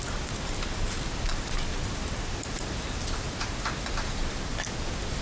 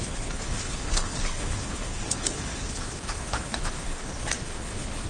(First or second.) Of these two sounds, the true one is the first